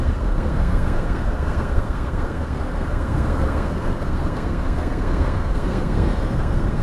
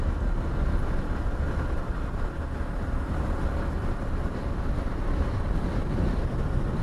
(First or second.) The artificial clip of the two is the first